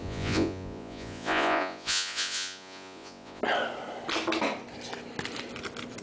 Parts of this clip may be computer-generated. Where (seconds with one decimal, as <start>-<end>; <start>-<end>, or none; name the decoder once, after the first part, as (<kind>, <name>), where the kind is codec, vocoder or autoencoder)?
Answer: 0.0-3.4 (vocoder, Vocos)